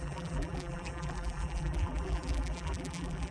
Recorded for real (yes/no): no